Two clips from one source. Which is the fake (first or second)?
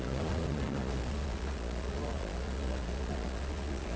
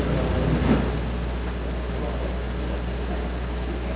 first